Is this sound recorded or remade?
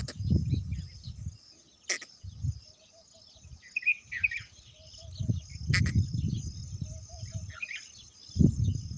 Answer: recorded